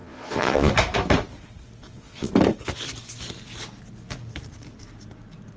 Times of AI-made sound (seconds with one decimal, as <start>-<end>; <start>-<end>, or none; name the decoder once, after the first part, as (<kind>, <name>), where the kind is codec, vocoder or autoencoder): 0.0-0.7 (vocoder, Vocos); 1.8-2.3